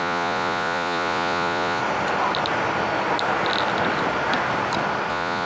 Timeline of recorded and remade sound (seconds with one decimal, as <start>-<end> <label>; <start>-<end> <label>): 0.0-1.8 remade; 1.8-5.1 recorded; 5.1-5.5 remade